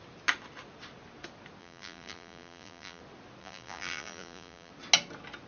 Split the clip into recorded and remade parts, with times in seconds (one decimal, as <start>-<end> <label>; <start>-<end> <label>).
0.0-1.6 recorded; 1.6-3.0 remade; 3.0-3.4 recorded; 3.4-4.7 remade; 4.7-5.5 recorded